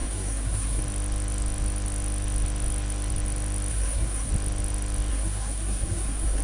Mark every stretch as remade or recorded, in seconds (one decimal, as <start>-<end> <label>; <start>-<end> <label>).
0.0-0.8 remade; 0.8-3.7 recorded; 3.7-4.3 remade; 4.3-5.1 recorded; 5.1-6.4 remade